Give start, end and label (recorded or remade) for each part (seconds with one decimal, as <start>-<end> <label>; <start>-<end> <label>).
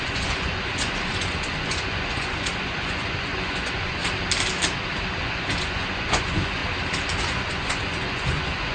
0.0-4.0 remade; 4.0-5.2 recorded; 5.2-6.6 remade; 6.6-7.2 recorded; 7.2-8.7 remade